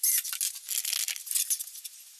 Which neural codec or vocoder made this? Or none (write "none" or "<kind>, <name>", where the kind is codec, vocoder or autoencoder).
none